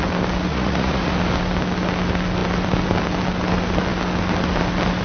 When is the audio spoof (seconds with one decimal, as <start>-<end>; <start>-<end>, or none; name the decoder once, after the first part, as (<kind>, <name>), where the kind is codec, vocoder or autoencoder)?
0.5-1.1 (vocoder, Vocos)